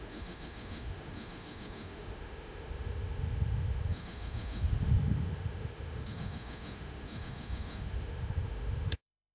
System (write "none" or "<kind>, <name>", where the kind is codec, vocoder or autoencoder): autoencoder, DAC-VAE